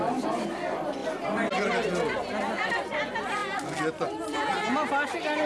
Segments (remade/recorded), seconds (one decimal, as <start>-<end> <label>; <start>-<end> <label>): 0.0-5.5 recorded